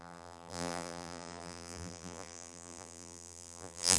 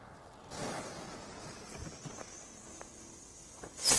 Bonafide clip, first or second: second